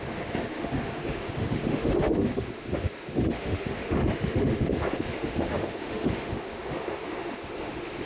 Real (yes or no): no